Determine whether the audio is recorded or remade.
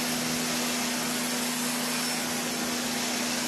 recorded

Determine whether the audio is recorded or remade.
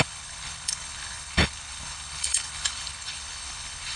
remade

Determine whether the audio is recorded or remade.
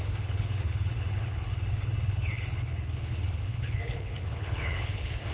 remade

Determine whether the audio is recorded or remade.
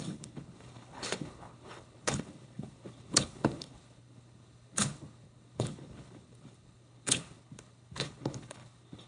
remade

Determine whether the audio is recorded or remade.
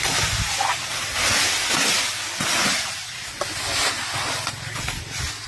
recorded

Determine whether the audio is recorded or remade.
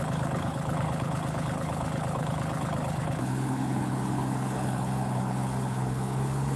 remade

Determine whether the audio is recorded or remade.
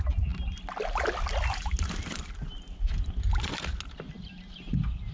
recorded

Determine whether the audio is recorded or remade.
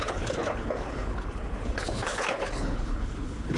remade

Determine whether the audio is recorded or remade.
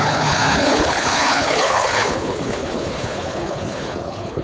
remade